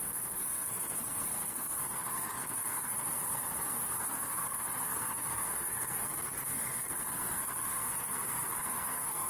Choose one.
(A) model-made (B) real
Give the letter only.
A